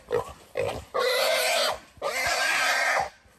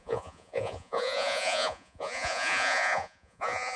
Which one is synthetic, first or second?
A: second